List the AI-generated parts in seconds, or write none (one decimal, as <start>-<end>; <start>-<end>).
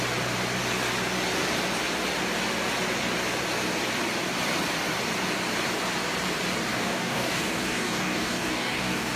6.7-9.2